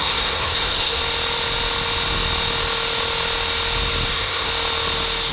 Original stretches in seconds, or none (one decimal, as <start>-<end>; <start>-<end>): 1.0-4.1; 4.5-5.3